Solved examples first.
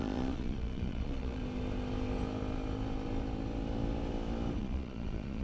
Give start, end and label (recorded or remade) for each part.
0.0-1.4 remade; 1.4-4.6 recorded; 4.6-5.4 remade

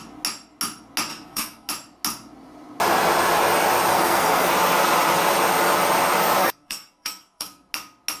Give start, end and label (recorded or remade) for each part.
0.0-1.1 recorded; 1.1-1.7 remade; 1.7-3.9 recorded; 3.9-4.5 remade; 4.5-6.4 recorded; 6.4-7.7 remade; 7.7-8.2 recorded

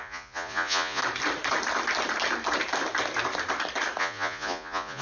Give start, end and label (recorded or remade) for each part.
0.0-1.0 remade; 1.0-4.0 recorded; 4.0-5.0 remade

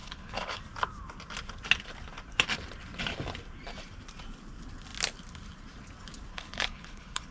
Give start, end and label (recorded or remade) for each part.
0.0-0.6 remade; 0.6-6.3 recorded; 6.3-7.3 remade

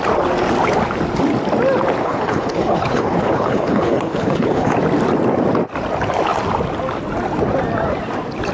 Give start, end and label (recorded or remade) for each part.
0.0-2.0 recorded; 2.0-4.7 remade; 4.7-8.5 recorded

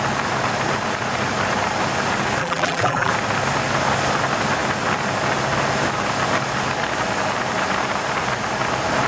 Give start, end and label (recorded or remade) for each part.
0.0-2.4 recorded; 2.4-3.1 remade; 3.1-9.1 recorded

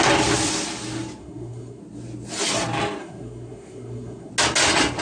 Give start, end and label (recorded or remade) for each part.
0.0-1.2 recorded; 1.2-1.8 remade; 1.8-3.0 recorded; 3.0-4.3 remade; 4.3-5.0 recorded